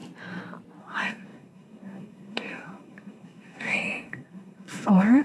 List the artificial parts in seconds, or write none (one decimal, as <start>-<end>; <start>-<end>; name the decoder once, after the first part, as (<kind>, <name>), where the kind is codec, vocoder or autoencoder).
0.8-5.2 (codec, SNAC)